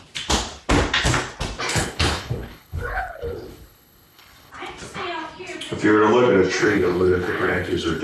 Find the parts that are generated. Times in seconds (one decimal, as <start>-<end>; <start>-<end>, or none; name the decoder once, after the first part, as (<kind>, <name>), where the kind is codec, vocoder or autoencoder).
1.7-4.5 (codec, HILCodec); 6.6-8.0